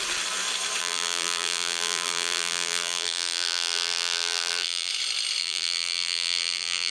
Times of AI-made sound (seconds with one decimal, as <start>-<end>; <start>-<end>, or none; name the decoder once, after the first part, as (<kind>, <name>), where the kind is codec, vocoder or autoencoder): 0.8-4.9 (vocoder, BigVGAN v2); 5.4-6.9